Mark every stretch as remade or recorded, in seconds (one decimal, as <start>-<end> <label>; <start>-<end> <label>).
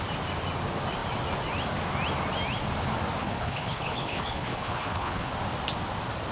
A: 0.0-3.2 recorded; 3.2-5.3 remade; 5.3-6.3 recorded